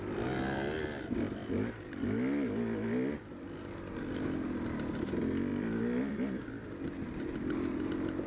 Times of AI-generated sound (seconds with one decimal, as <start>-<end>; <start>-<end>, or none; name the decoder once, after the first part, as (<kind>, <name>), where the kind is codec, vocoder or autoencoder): none